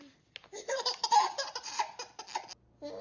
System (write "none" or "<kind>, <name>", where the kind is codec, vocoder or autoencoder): none